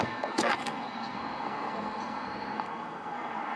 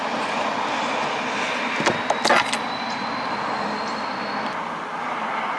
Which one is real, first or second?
second